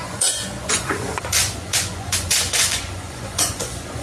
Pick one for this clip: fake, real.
fake